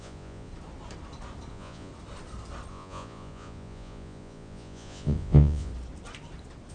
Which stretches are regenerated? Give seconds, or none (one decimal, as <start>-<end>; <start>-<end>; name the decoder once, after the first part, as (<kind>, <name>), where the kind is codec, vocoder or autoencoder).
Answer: 0.0-0.5 (vocoder, Vocos); 1.5-1.9; 2.7-5.7